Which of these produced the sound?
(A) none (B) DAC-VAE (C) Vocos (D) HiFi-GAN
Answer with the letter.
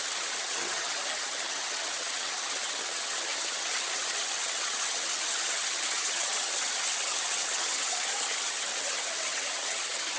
D